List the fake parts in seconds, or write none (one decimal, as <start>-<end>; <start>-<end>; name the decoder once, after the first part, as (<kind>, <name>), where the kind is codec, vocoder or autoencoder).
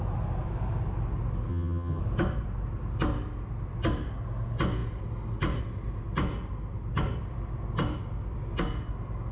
1.5-2.0 (vocoder, HiFi-GAN)